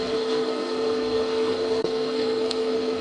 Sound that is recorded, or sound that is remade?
remade